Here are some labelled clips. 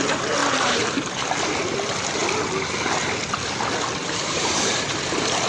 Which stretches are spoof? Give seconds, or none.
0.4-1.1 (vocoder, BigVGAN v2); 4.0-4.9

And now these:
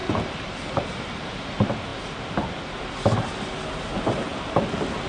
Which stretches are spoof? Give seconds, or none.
0.0-1.3 (vocoder, BigVGAN v2)

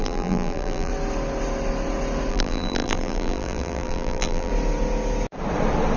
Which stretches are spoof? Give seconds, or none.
0.0-0.9 (vocoder, BigVGAN v2); 2.3-4.5

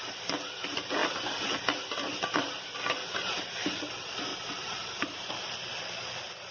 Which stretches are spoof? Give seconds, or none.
4.3-5.3 (vocoder, BigVGAN v2)